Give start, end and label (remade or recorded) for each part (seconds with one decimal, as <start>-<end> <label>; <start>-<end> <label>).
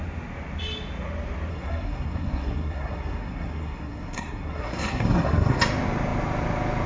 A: 0.0-1.5 recorded; 1.5-5.6 remade; 5.6-6.9 recorded